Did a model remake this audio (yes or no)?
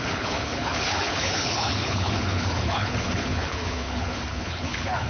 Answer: yes